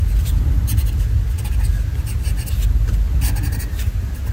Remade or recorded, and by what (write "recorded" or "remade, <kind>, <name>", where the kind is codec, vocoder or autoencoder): recorded